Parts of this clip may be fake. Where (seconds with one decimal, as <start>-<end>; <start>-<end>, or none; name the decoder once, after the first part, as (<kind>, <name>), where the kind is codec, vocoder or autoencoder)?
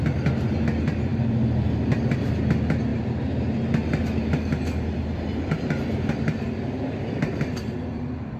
none